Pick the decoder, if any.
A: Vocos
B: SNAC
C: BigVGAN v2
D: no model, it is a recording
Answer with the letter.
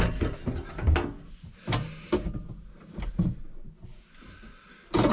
D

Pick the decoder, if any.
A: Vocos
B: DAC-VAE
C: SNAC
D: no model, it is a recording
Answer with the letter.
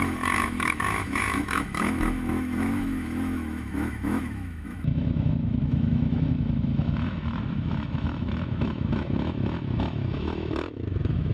B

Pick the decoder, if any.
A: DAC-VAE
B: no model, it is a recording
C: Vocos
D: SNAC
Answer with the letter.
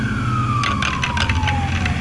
B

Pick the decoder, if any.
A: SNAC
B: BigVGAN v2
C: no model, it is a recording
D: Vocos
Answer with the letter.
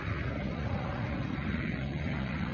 D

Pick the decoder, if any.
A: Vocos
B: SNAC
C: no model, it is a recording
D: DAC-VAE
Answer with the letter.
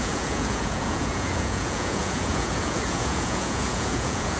A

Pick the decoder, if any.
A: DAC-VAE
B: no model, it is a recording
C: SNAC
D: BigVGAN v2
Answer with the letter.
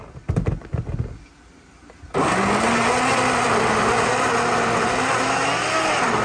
B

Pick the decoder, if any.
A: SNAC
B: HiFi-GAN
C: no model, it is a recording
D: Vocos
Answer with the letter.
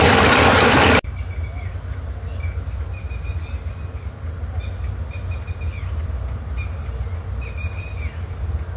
C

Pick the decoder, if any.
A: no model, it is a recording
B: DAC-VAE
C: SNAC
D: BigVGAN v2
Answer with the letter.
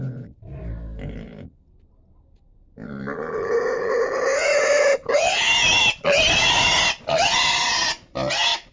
A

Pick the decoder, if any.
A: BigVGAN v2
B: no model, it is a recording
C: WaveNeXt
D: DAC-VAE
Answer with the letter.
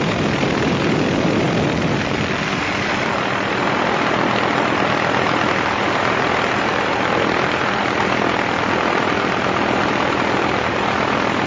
A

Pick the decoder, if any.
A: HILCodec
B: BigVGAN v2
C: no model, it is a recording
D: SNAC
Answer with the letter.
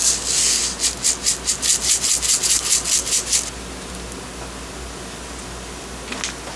C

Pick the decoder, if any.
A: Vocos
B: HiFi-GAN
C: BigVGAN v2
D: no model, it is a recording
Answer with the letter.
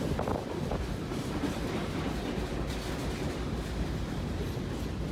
D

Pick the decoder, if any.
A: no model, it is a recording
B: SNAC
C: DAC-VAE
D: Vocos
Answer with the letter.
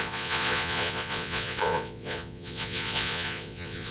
D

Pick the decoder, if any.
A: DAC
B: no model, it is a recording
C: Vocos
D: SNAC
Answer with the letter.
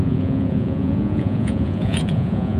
C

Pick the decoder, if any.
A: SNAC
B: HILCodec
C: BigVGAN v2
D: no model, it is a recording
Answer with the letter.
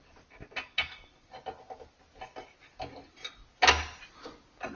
D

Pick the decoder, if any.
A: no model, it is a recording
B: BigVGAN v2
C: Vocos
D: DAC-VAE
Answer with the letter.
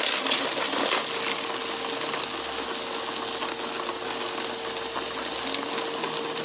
A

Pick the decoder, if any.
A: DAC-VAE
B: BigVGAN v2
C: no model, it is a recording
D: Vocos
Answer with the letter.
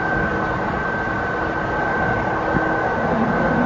C